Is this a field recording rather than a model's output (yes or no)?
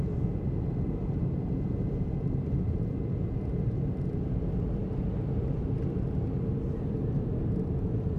yes